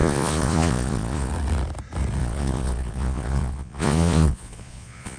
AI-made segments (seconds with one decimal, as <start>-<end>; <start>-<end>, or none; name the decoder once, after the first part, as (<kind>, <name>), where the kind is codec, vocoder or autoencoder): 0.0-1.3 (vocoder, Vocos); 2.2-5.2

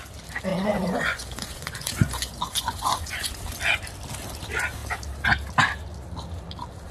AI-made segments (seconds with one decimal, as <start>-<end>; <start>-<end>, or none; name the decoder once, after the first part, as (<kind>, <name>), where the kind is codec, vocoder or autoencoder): 0.5-3.3 (vocoder, Vocos)

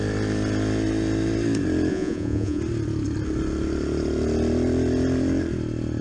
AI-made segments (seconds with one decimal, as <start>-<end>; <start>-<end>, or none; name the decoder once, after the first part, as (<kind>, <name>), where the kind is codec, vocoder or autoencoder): 1.9-2.6 (vocoder, Vocos)

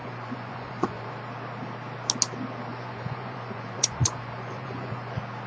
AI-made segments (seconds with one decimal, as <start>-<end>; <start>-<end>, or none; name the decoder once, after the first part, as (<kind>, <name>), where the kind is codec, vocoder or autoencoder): 0.0-1.1 (vocoder, Vocos); 2.7-5.1

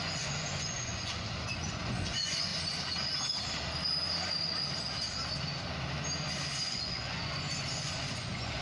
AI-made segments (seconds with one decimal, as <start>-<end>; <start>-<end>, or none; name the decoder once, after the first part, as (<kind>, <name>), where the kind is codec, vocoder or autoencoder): 0.0-2.5 (vocoder, Vocos); 6.7-8.6

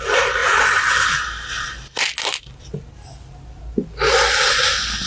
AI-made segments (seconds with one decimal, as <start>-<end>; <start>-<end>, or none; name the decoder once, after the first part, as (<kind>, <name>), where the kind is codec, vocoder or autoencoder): none

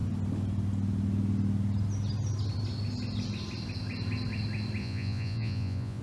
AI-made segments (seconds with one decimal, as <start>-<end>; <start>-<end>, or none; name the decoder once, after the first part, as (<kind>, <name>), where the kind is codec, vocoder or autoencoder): 4.8-6.0 (vocoder, Vocos)

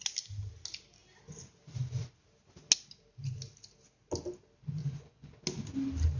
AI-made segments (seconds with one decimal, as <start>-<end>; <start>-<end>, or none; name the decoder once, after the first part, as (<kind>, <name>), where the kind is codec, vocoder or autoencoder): 4.8-5.3 (vocoder, Vocos)